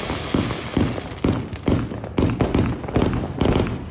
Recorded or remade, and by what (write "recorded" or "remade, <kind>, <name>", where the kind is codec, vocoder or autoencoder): recorded